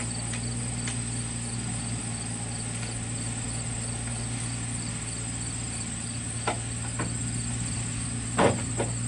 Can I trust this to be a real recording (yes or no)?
yes